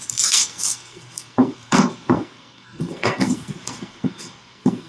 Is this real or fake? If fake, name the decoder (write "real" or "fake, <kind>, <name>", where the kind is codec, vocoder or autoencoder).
fake, codec, SNAC